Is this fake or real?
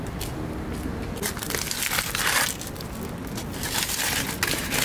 real